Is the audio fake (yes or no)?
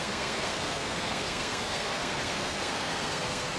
yes